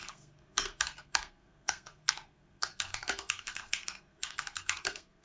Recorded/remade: remade